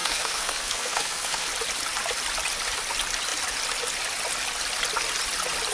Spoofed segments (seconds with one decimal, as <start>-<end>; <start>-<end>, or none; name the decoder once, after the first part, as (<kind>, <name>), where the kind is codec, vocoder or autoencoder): 0.0-1.5 (codec, SNAC)